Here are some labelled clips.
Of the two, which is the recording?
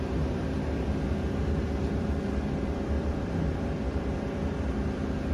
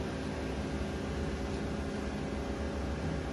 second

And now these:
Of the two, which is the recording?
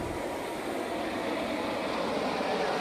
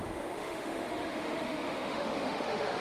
first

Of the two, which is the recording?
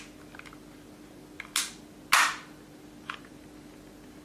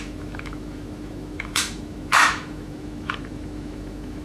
first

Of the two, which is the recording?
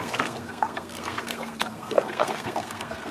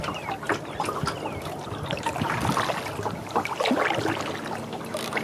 second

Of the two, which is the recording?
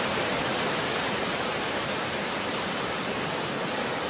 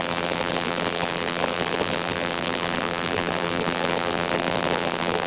first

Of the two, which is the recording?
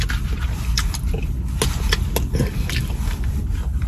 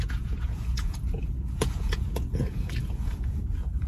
first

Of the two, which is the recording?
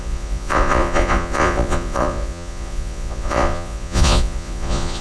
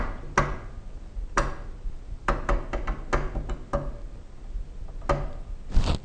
second